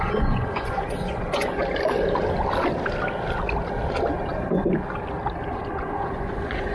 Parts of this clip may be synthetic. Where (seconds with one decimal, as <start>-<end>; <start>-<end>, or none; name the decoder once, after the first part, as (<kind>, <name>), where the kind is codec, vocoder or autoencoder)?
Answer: 0.0-1.6 (vocoder, Vocos); 5.5-6.7